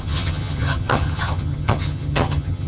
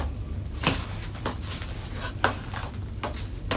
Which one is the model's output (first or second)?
first